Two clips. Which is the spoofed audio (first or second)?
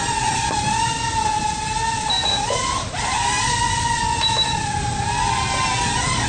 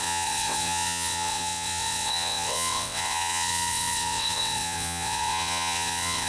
second